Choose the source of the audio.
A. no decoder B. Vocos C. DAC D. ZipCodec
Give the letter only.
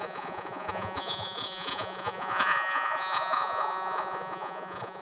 B